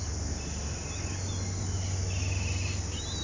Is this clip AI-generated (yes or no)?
no